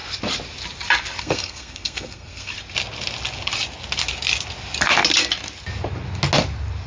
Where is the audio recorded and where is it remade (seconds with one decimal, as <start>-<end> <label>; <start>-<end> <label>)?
0.0-1.2 recorded; 1.2-2.5 remade; 2.5-6.9 recorded